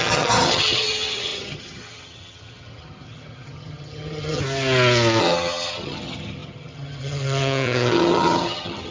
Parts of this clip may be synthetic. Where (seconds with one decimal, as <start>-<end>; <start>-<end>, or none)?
0.0-4.4; 5.2-8.9